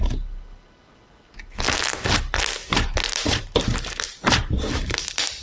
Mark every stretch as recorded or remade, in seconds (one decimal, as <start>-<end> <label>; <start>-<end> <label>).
0.0-2.6 recorded; 2.6-4.7 remade; 4.7-5.4 recorded